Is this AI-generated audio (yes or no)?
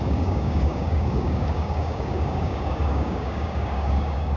yes